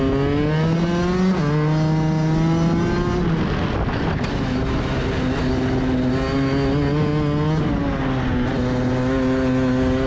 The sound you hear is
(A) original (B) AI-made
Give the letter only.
A